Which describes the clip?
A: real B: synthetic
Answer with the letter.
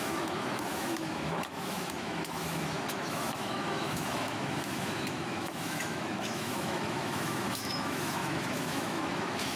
B